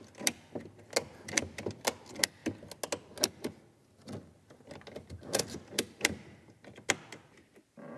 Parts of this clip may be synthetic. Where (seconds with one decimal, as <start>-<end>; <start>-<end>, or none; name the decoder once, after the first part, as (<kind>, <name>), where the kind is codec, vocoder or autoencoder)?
none